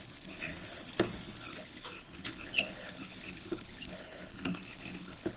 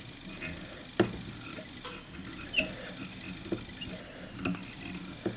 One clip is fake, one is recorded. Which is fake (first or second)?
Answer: first